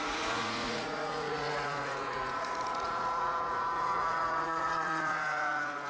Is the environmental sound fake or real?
fake